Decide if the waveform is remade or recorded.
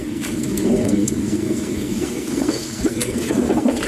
remade